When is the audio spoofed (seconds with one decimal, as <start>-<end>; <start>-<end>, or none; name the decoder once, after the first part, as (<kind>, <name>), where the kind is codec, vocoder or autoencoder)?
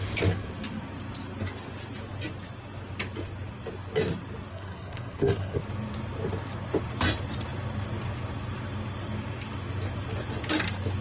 4.5-5.6 (codec, SNAC)